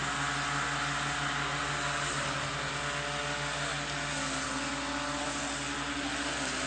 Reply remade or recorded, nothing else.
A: recorded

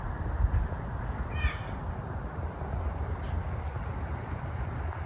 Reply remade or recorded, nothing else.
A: recorded